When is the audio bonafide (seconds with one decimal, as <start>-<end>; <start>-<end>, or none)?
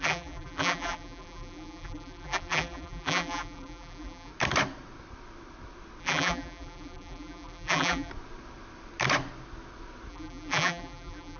4.3-6.0; 8.1-10.1